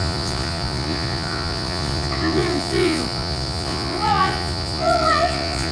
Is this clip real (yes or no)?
no